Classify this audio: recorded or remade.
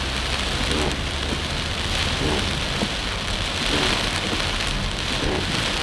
recorded